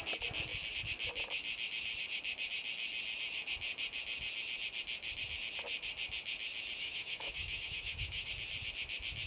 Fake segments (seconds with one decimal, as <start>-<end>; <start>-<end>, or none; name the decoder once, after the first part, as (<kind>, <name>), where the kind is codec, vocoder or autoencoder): 6.8-8.3 (autoencoder, DAC-VAE)